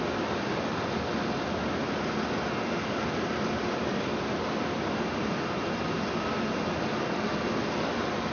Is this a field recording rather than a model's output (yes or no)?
yes